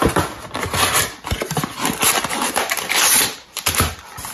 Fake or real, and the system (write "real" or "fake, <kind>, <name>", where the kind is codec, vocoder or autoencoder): real